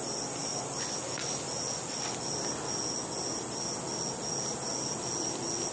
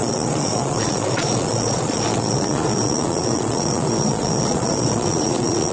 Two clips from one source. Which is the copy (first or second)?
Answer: second